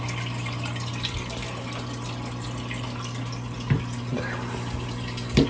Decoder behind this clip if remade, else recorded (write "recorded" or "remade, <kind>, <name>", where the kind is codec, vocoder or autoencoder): recorded